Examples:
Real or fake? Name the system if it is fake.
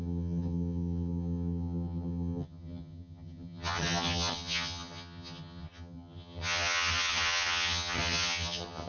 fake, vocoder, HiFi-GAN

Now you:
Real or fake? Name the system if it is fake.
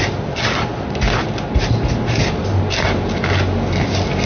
real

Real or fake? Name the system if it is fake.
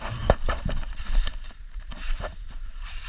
fake, vocoder, BigVGAN v2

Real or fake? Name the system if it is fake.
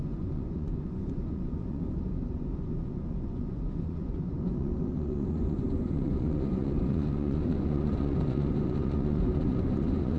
fake, vocoder, Vocos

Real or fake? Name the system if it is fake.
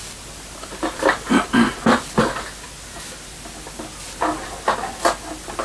real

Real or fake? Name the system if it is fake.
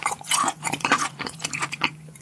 fake, vocoder, Vocos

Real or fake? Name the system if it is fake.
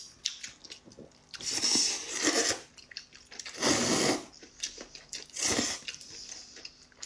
real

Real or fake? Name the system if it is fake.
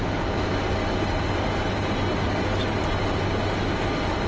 real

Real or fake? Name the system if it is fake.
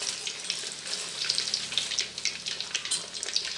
real